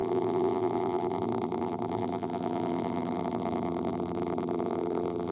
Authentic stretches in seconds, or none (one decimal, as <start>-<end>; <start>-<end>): none

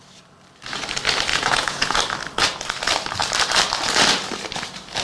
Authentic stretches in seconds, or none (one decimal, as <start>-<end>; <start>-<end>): 0.0-1.3; 2.0-5.0